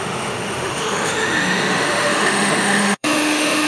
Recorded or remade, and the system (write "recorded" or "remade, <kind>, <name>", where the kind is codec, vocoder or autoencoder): remade, autoencoder, DAC-VAE